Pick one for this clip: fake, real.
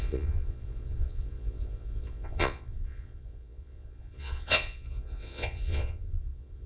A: fake